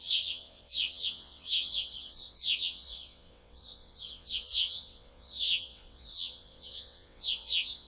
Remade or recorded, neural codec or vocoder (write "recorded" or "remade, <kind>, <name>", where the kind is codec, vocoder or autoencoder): remade, vocoder, WaveNeXt